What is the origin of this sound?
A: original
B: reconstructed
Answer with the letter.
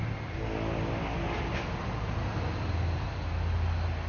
A